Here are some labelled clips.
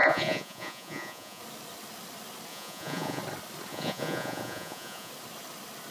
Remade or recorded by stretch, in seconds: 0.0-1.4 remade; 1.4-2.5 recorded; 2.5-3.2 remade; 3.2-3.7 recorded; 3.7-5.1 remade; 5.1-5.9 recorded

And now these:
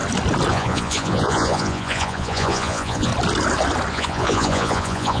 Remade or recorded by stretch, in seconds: 0.0-0.5 recorded; 0.5-3.1 remade; 3.1-3.9 recorded; 3.9-5.2 remade

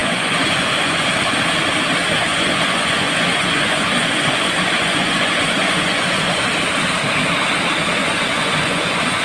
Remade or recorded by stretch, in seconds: 0.0-1.1 remade; 1.1-2.3 recorded; 2.3-6.5 remade; 6.5-8.0 recorded; 8.0-9.2 remade

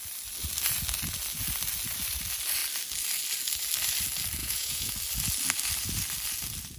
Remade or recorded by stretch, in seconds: 0.0-4.4 recorded; 4.4-4.9 remade; 4.9-6.8 recorded

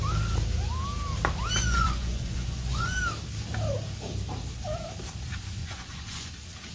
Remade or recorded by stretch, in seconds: 0.0-1.6 recorded; 1.6-3.0 remade; 3.0-5.6 recorded; 5.6-6.3 remade; 6.3-6.7 recorded

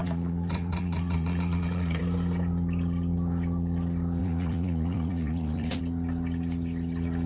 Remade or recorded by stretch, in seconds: 0.0-2.0 remade; 2.0-4.2 recorded; 4.2-5.8 remade; 5.8-7.3 recorded

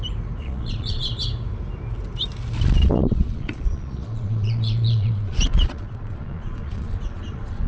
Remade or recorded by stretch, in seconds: 0.0-0.4 recorded; 0.4-1.1 remade; 1.1-2.8 recorded; 2.8-7.7 remade